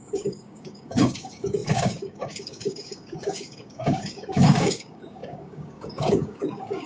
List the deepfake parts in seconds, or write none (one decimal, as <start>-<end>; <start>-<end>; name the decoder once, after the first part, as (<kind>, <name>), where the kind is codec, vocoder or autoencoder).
0.0-6.9 (codec, DAC)